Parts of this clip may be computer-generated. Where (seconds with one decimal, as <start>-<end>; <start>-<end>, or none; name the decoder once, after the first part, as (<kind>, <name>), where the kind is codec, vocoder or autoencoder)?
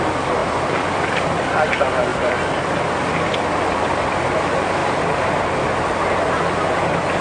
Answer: 0.4-1.5 (vocoder, BigVGAN v2); 4.8-5.4